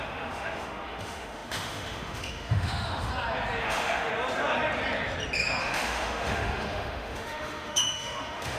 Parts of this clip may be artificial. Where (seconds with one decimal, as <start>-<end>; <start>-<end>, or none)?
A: 0.0-3.1; 3.6-4.1; 5.6-8.6